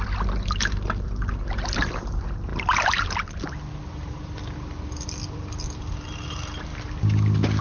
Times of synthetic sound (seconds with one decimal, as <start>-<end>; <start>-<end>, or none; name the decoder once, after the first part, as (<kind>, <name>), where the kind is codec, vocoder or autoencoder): none